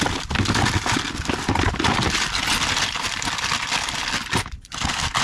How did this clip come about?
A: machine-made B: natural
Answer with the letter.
B